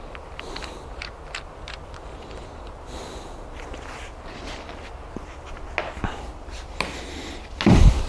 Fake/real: real